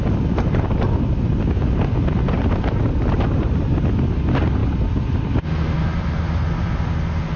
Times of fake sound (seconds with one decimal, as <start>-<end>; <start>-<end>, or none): none